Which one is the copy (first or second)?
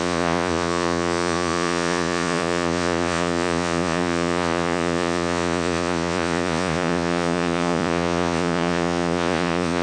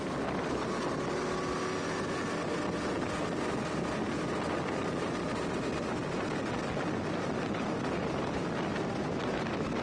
first